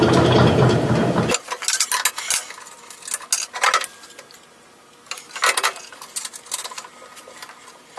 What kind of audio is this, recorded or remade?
recorded